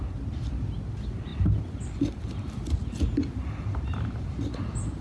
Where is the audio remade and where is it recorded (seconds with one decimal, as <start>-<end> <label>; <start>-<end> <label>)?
0.0-5.0 recorded